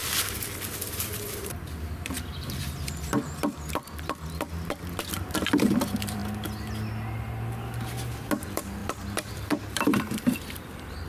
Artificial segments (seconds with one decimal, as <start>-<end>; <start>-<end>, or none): 1.0-6.2; 8.4-11.1